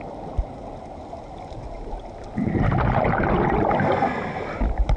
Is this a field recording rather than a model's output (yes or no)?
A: yes